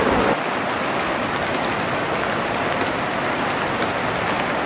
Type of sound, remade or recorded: recorded